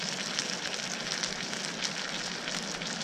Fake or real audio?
real